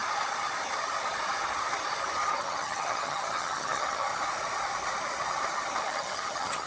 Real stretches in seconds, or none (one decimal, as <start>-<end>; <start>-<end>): 0.0-2.3; 4.1-5.8